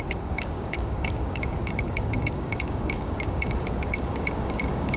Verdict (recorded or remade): remade